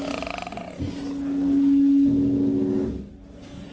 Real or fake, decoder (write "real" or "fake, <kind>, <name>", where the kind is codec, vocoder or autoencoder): real